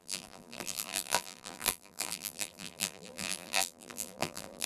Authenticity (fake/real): fake